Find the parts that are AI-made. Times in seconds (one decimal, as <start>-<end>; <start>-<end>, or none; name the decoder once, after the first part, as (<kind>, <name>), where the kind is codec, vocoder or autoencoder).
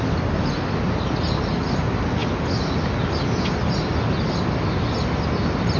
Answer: none